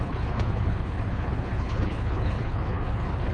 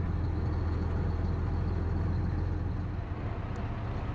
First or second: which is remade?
first